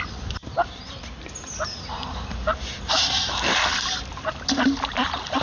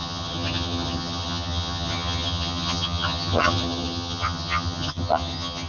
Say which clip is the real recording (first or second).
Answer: first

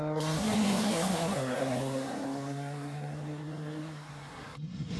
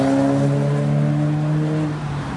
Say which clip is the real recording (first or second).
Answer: second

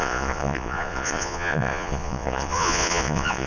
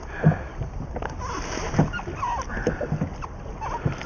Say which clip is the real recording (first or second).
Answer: second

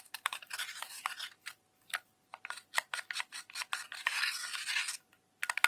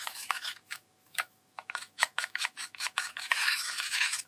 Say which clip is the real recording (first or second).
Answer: first